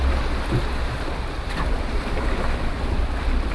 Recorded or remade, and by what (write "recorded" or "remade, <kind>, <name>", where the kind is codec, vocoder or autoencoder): recorded